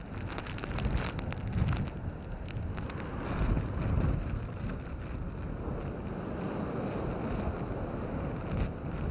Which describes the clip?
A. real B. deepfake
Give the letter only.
A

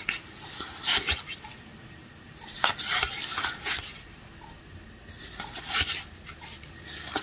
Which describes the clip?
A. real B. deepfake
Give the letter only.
A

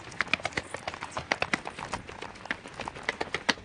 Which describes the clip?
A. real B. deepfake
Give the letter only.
A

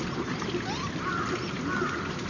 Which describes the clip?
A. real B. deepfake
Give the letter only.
A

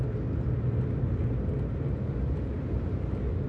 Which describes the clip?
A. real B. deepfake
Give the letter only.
A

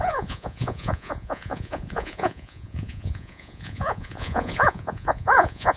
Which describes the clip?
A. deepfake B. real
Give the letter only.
A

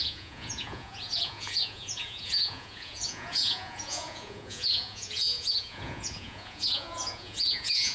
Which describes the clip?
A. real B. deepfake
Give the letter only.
B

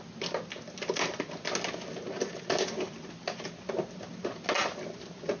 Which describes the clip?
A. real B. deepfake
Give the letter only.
A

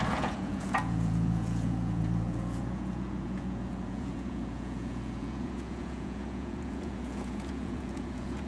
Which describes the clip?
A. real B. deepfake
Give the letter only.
B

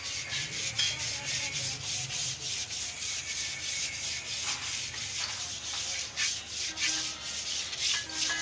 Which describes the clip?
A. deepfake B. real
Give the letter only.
B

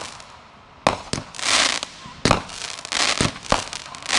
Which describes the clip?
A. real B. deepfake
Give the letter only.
A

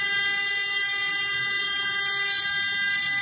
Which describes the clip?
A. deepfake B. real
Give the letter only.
B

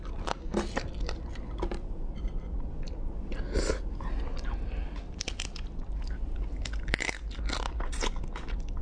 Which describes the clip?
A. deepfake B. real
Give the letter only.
B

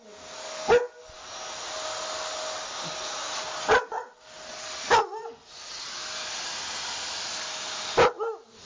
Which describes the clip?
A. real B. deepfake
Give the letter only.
A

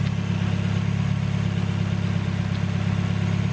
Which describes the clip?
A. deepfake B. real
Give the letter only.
B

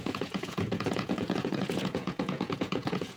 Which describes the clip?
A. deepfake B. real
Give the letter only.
A